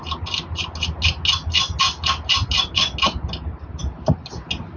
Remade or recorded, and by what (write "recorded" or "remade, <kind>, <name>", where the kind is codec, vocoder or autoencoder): recorded